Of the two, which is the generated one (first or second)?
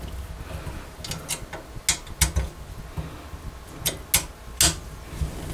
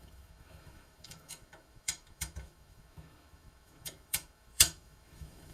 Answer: second